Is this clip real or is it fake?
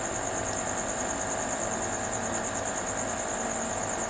real